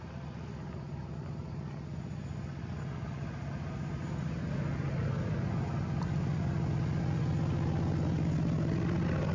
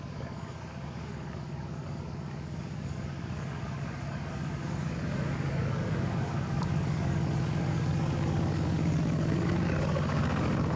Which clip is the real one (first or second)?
first